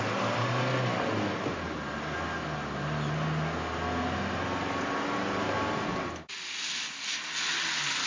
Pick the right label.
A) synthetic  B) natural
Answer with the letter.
B